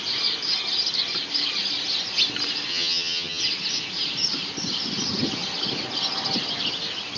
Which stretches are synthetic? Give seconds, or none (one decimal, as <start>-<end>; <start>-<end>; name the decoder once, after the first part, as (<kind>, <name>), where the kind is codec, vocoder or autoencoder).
2.7-3.4 (vocoder, HiFi-GAN)